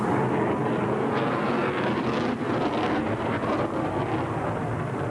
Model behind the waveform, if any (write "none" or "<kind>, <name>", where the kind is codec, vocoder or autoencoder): none